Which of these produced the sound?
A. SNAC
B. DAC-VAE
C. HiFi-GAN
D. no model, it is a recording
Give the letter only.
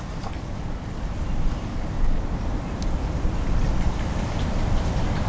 D